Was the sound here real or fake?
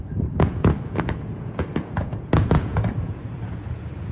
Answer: fake